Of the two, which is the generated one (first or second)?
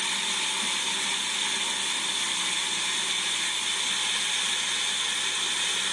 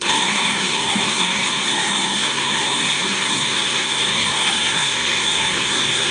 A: second